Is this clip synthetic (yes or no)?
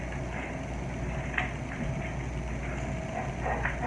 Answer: no